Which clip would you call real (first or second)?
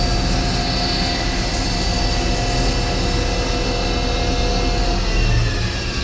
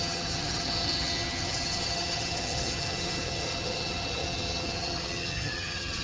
first